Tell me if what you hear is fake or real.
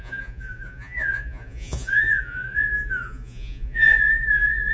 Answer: fake